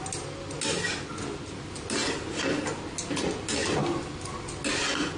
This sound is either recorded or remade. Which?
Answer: recorded